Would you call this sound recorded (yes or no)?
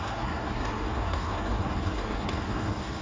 no